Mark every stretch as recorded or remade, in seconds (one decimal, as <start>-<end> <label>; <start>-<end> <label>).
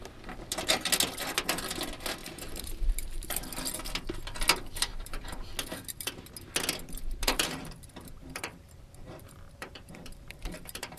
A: 0.0-2.2 recorded; 2.2-3.4 remade; 3.4-4.9 recorded; 4.9-5.5 remade; 5.5-7.2 recorded; 7.2-11.0 remade